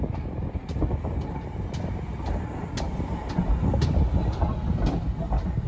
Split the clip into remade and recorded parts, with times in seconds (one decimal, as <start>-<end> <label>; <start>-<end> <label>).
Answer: 0.0-5.7 recorded